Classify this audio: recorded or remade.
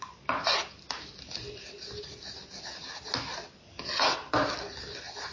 recorded